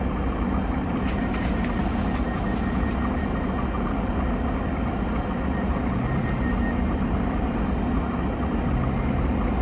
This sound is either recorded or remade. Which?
recorded